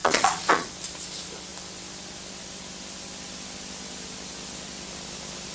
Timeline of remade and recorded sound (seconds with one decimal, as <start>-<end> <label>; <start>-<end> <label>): 0.0-0.7 remade; 0.7-5.5 recorded